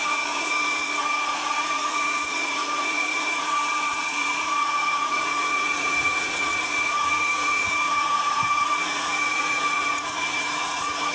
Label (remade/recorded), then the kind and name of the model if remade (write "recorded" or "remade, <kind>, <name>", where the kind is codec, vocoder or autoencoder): remade, vocoder, Vocos